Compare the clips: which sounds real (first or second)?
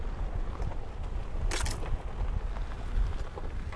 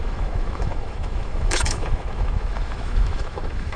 first